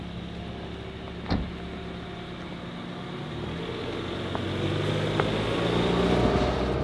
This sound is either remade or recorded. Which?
recorded